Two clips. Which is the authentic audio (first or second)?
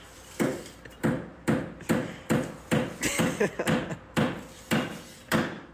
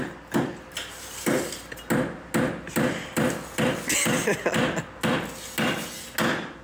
second